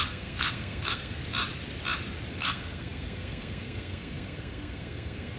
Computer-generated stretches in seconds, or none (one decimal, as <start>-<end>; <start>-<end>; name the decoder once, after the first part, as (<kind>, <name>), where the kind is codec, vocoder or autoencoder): 0.0-1.2 (codec, SNAC); 2.3-5.4